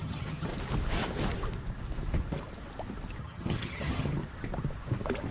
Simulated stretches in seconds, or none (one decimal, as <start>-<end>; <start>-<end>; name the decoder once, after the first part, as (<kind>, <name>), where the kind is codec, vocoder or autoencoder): 0.0-0.5 (vocoder, HiFi-GAN); 3.2-4.2